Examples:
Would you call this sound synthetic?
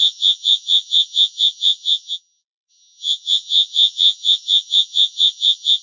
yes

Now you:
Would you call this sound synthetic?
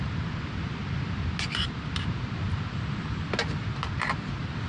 no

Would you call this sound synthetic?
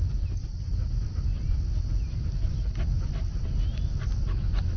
no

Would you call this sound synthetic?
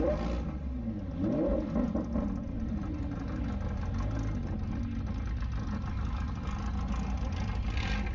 no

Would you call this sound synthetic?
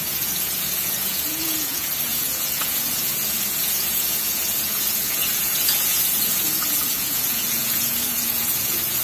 yes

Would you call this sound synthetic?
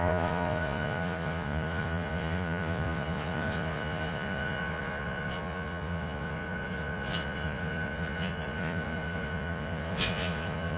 yes